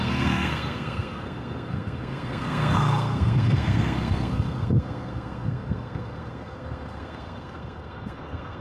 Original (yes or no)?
no